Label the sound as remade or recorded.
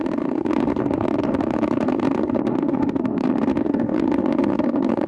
remade